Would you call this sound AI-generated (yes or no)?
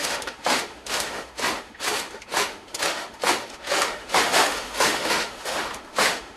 yes